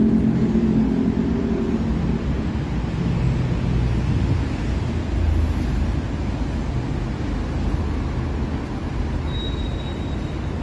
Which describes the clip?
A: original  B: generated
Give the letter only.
A